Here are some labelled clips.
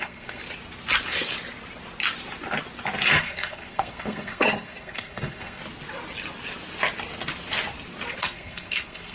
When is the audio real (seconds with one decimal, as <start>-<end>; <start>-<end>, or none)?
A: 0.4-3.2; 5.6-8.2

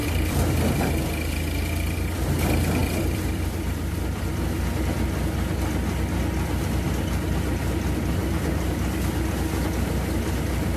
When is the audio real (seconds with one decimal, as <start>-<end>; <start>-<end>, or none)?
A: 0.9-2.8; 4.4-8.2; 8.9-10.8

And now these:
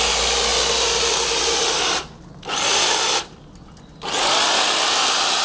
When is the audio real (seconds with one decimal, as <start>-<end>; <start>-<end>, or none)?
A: 0.0-5.4

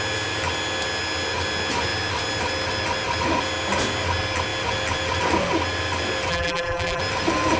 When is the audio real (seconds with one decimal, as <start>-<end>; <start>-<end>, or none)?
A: 0.0-6.3; 7.0-7.6